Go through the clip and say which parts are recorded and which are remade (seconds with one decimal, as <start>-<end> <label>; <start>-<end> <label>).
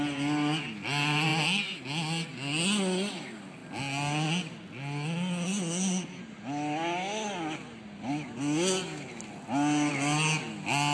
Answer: 0.0-10.9 recorded